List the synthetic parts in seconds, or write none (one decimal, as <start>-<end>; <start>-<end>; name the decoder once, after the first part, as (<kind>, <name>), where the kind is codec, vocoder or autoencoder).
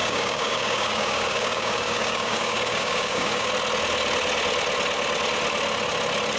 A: 0.0-3.5 (codec, DAC)